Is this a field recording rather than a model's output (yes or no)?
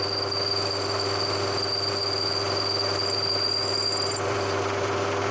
yes